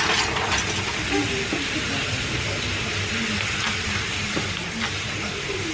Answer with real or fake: real